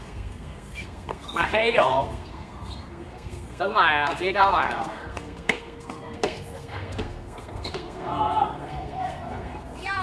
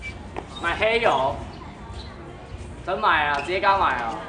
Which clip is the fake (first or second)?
first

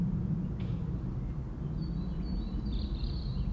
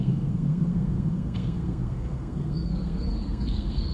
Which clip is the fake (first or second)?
second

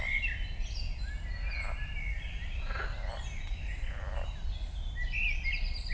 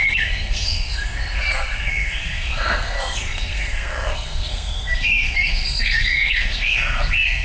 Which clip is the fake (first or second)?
second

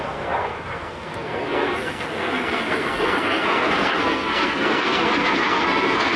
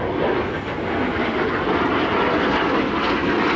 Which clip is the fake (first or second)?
first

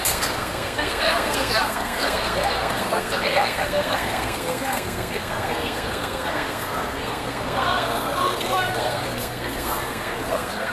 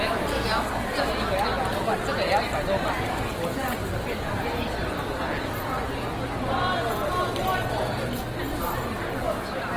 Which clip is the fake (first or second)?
first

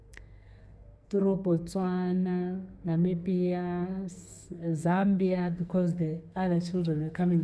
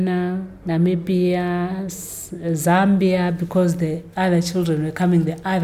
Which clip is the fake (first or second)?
first